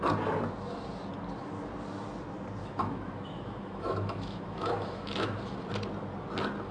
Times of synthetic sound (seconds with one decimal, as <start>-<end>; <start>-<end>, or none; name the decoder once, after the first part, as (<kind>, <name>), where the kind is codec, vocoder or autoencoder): 2.6-5.4 (autoencoder, DAC-VAE)